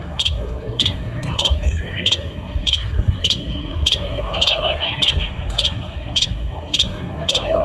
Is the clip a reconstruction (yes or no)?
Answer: yes